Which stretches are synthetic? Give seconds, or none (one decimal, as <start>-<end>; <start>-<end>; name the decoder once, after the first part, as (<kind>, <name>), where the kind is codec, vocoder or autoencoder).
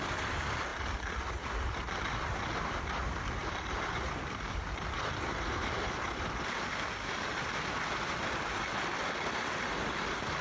0.0-0.7 (vocoder, BigVGAN v2); 1.4-10.4